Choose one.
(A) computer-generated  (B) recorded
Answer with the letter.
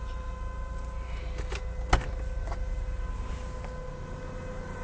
B